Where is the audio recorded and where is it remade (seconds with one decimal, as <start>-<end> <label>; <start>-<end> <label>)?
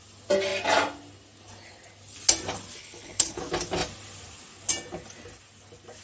0.0-2.8 recorded; 2.8-3.4 remade; 3.4-6.0 recorded